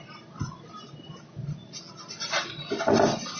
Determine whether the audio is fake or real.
real